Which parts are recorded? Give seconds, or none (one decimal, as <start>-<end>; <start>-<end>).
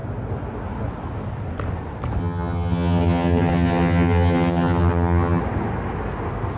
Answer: 0.0-2.2; 5.4-6.6